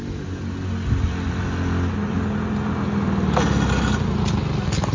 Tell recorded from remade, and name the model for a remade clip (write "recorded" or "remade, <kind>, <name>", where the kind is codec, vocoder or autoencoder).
recorded